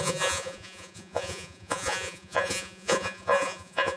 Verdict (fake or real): fake